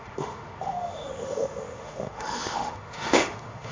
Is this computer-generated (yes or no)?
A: yes